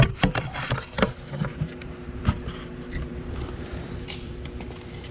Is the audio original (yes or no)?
no